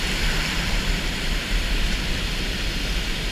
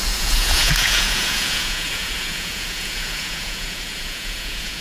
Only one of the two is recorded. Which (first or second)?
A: first